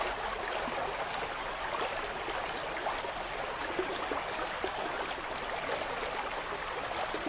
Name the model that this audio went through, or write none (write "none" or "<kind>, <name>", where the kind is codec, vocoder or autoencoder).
none